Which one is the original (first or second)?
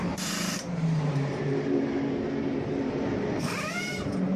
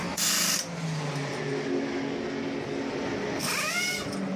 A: second